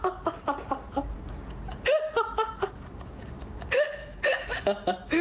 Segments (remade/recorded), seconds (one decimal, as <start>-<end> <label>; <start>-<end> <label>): 0.0-4.0 recorded; 4.0-5.2 remade

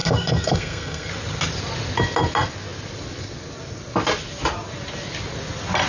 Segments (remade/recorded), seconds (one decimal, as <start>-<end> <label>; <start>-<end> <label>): 0.0-1.1 remade; 1.1-5.9 recorded

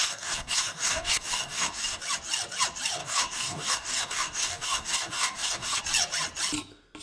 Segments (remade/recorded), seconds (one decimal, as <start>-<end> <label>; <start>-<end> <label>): 0.0-2.0 remade; 2.0-3.0 recorded; 3.0-5.8 remade; 5.8-7.0 recorded

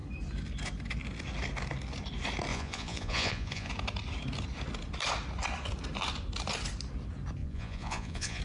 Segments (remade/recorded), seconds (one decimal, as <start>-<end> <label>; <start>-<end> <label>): 0.0-2.5 recorded; 2.5-3.7 remade; 3.7-7.4 recorded; 7.4-8.4 remade